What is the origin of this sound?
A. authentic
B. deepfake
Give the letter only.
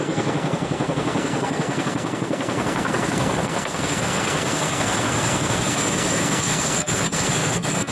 B